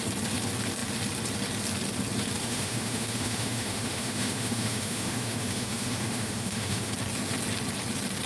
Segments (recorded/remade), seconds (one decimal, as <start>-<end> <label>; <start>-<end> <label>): 0.0-2.4 recorded; 2.4-6.9 remade; 6.9-8.3 recorded